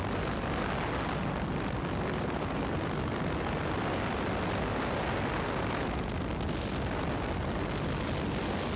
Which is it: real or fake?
real